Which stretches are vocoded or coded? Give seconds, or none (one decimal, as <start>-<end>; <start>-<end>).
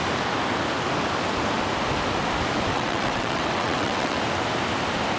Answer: 2.7-4.2